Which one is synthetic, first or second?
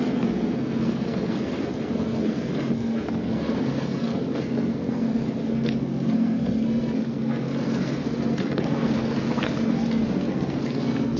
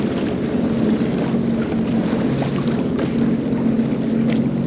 first